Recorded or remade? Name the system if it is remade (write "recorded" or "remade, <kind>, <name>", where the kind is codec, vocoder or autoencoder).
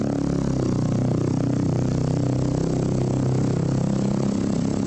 recorded